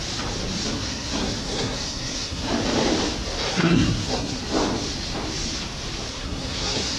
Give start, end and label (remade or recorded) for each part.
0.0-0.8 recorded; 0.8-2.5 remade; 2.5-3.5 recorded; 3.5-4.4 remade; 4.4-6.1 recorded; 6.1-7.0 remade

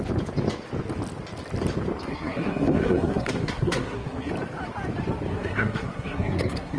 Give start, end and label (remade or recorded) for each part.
0.0-2.1 recorded; 2.1-4.3 remade; 4.3-5.3 recorded; 5.3-6.8 remade